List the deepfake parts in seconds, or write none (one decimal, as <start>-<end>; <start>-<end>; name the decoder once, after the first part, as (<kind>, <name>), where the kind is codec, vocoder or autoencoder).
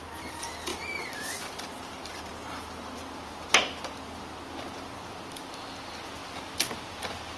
none